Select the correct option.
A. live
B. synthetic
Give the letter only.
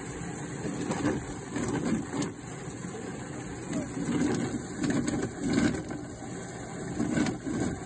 A